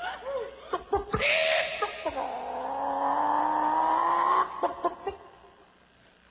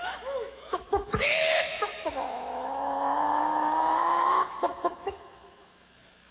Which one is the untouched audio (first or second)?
first